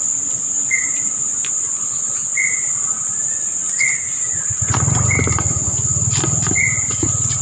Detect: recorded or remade recorded